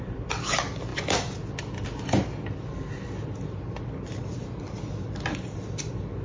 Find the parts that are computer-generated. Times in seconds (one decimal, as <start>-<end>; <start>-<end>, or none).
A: none